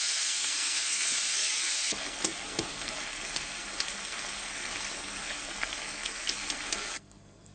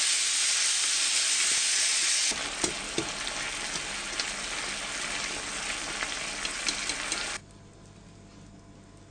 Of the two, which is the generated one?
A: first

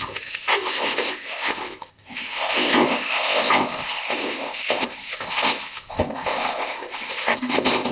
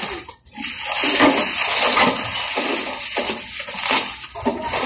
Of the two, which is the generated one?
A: first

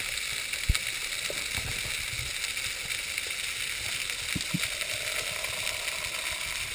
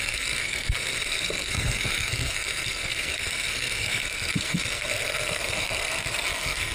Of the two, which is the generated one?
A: second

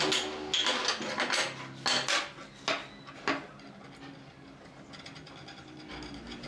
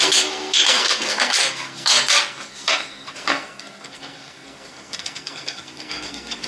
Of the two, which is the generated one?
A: second